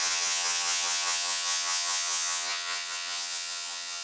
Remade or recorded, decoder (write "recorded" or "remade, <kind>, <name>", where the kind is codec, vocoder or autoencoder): remade, vocoder, HiFi-GAN